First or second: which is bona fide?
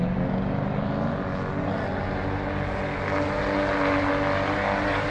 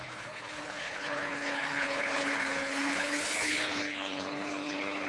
first